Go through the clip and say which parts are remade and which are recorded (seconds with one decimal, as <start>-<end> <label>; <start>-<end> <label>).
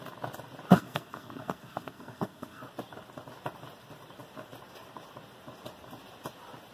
0.0-0.7 recorded; 0.7-2.6 remade; 2.6-6.7 recorded